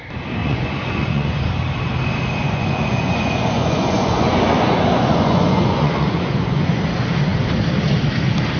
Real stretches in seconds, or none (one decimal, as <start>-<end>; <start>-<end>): 0.0-0.4; 1.4-2.4; 6.8-8.6

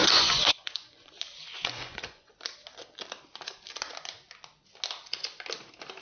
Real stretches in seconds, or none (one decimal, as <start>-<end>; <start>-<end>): 1.1-1.5; 2.3-6.0

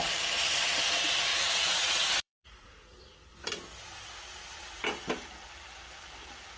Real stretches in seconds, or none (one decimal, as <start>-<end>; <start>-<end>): 0.0-1.3; 3.0-6.6

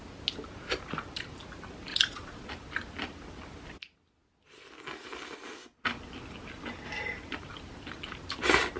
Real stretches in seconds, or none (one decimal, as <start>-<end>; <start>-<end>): 0.0-1.9; 2.5-8.8

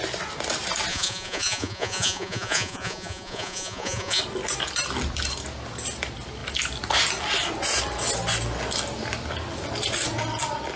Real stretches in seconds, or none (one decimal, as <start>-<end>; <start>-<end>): 0.0-0.9; 4.2-10.8